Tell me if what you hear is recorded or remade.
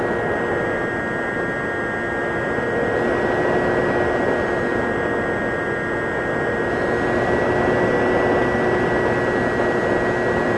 recorded